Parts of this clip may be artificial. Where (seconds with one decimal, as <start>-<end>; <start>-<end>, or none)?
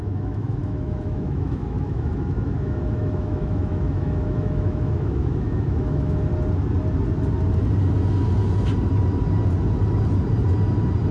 0.0-6.3